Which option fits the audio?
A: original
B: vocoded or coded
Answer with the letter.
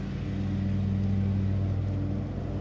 A